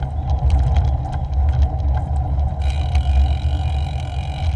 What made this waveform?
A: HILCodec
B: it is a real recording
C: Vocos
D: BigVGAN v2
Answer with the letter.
B